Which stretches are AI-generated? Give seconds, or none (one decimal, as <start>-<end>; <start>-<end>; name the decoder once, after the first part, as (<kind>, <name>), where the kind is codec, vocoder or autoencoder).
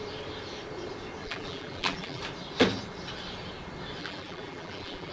1.2-2.2 (vocoder, BigVGAN v2); 4.0-5.1